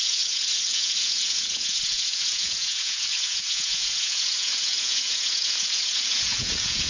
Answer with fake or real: fake